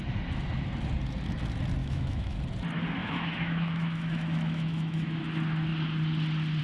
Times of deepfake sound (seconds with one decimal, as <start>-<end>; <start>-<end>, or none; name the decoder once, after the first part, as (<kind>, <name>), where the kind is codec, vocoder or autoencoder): 1.8-2.4 (autoencoder, DAC-VAE); 3.0-5.2

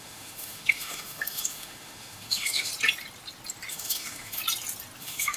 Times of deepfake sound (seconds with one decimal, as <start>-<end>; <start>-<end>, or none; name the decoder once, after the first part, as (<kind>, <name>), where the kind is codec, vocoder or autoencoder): 0.0-2.7 (autoencoder, DAC-VAE); 3.7-4.4; 5.0-5.4

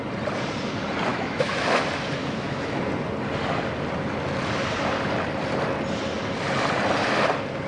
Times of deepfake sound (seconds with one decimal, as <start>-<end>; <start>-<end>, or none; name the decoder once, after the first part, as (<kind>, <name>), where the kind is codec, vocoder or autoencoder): 1.1-1.8 (autoencoder, DAC-VAE); 2.2-2.8

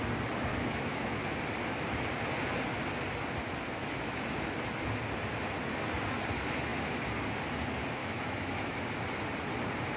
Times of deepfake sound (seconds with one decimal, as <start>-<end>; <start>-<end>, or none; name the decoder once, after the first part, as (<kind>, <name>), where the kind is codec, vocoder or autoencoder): 0.5-1.2 (autoencoder, DAC-VAE); 8.0-8.8